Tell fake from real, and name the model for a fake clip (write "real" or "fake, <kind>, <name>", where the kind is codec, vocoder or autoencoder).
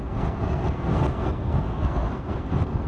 fake, codec, SNAC